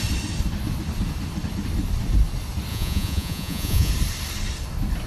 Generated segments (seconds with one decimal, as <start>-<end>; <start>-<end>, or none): 2.7-3.9